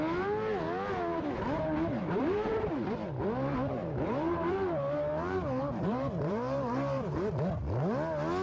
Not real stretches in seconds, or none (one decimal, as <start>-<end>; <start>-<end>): 2.0-2.7; 3.8-7.3